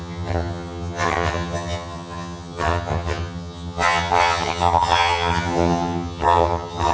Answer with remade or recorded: remade